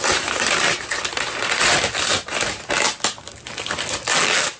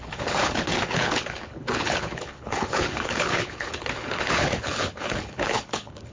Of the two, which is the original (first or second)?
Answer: first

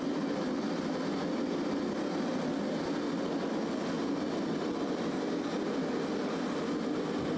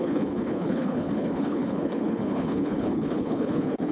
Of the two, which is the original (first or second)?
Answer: first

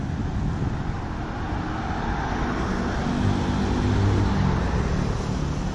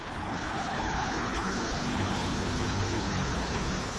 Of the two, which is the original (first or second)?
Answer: first